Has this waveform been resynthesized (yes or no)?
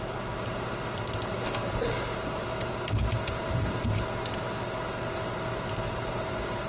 no